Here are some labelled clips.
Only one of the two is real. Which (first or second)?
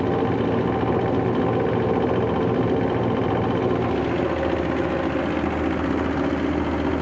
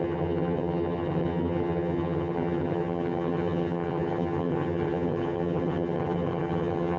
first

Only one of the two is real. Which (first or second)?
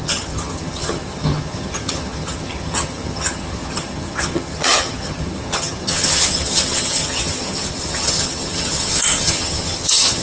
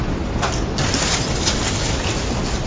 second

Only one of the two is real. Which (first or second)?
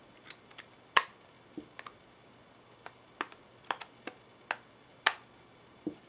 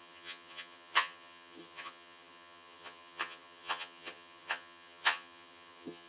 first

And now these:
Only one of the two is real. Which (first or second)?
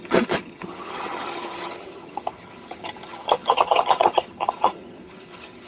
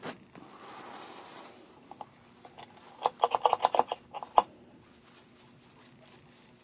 second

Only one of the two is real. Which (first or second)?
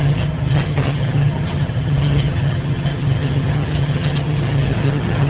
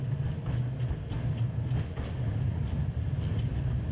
second